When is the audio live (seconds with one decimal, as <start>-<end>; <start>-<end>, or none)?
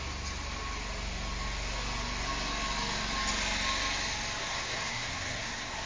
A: 0.0-4.4